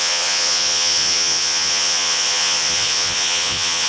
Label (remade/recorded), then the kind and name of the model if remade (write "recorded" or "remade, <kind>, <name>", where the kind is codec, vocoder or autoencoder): remade, vocoder, Vocos